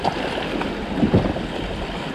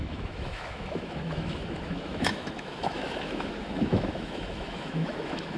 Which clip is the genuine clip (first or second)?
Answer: first